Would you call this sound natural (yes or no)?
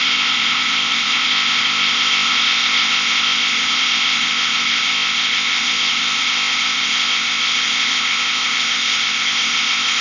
no